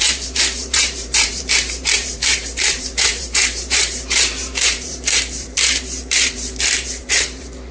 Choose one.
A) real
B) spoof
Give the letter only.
B